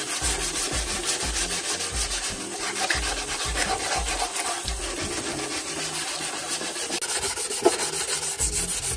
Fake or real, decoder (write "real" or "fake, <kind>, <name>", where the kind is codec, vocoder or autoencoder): real